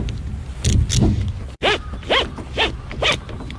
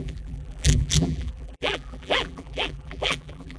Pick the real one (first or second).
first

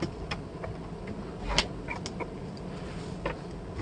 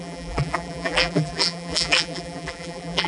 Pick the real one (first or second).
first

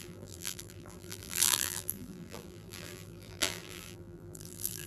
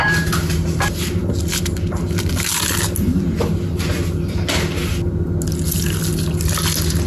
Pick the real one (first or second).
second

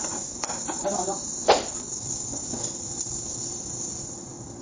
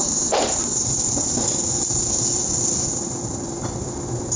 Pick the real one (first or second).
first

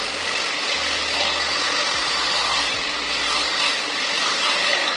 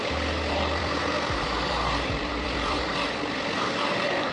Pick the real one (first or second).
first